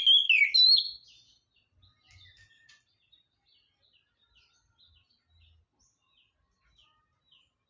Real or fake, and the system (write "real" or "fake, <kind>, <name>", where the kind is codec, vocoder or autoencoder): real